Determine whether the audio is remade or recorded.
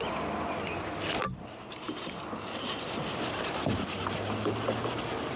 recorded